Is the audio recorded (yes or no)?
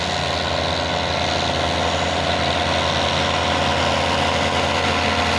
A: yes